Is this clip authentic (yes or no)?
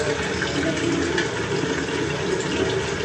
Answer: yes